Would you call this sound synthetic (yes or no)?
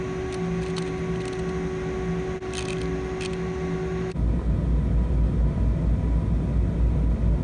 no